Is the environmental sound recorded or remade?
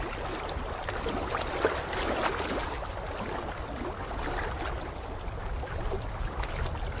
recorded